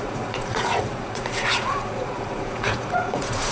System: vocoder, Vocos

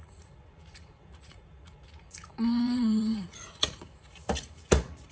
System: vocoder, Vocos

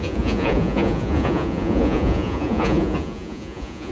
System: vocoder, Vocos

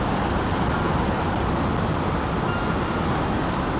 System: none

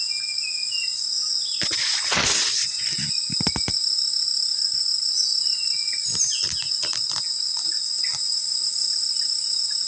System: none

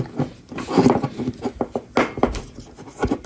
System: none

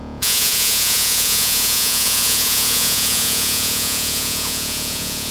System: vocoder, Vocos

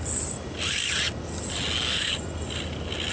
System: none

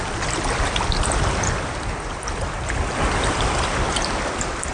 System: none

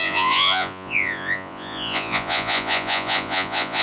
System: vocoder, Vocos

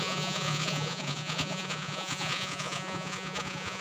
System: vocoder, Vocos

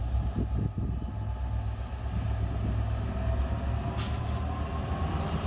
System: none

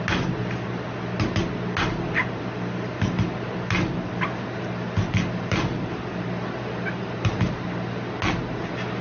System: none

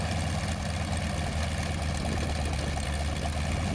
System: none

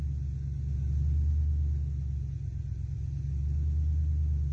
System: none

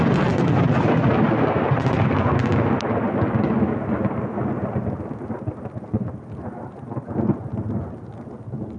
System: none